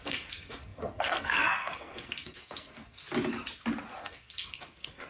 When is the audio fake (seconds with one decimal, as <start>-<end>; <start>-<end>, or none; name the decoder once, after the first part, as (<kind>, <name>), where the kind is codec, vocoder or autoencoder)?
0.0-3.0 (codec, SNAC); 3.9-5.1